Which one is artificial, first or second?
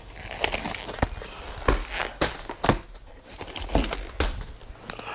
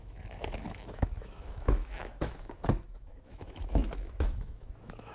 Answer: second